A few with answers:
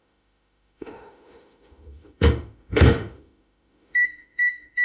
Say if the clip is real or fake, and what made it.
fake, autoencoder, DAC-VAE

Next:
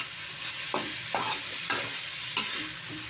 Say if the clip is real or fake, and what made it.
real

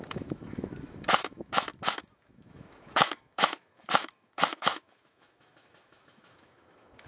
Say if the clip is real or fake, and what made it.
fake, autoencoder, DAC-VAE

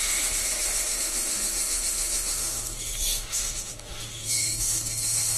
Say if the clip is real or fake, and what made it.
fake, autoencoder, DAC-VAE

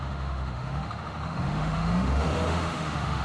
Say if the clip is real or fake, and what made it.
fake, autoencoder, DAC-VAE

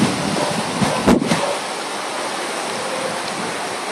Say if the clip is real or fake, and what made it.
real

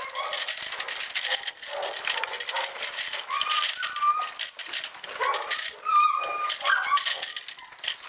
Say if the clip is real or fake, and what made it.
real